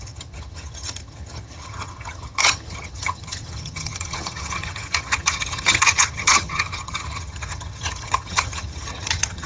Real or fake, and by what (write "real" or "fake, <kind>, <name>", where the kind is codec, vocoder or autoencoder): fake, vocoder, HiFi-GAN